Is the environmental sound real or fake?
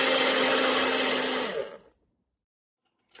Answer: real